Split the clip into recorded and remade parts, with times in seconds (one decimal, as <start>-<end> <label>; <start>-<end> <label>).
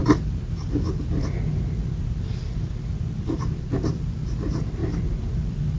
0.0-5.8 recorded